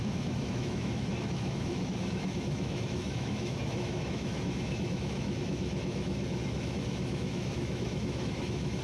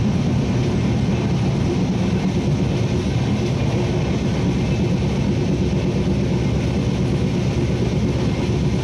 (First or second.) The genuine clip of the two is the second